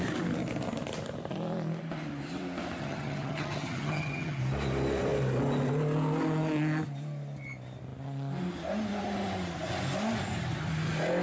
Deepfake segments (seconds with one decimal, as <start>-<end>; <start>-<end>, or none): 2.8-4.4